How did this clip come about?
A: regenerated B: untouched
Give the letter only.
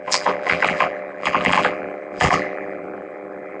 A